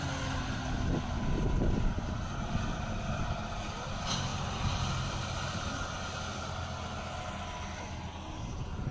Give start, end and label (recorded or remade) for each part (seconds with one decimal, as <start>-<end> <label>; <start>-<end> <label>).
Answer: 0.0-8.9 recorded